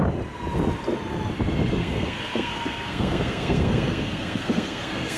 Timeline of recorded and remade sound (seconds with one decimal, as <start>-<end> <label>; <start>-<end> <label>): 0.0-1.8 recorded; 1.8-5.2 remade